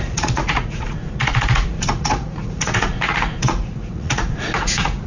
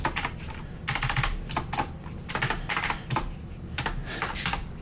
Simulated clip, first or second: first